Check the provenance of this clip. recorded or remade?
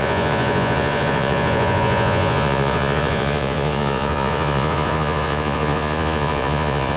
remade